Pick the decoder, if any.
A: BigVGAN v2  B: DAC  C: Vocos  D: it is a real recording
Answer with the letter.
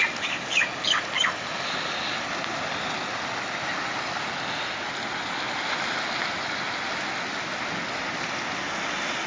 D